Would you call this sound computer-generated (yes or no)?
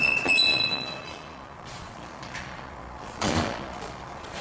yes